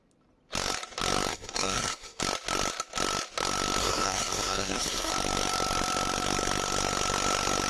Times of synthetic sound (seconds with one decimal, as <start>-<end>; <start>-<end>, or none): 1.3-2.2; 3.8-5.1